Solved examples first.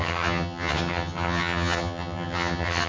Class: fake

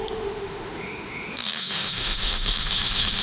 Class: fake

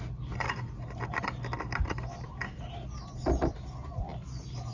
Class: real